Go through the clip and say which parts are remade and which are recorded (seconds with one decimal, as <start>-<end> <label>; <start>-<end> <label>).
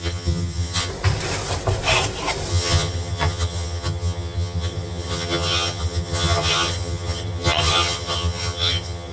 0.0-0.9 remade; 0.9-2.5 recorded; 2.5-9.1 remade